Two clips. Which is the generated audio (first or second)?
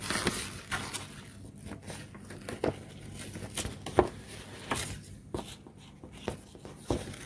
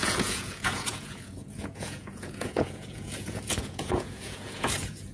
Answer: second